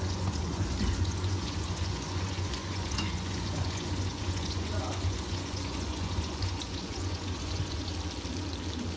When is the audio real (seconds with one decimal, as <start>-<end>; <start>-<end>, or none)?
7.9-9.0